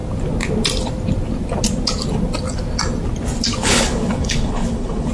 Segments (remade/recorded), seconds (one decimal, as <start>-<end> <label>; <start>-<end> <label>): 0.0-3.6 recorded; 3.6-5.1 remade